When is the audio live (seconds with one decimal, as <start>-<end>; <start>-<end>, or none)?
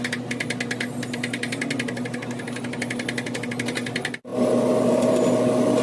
0.0-5.8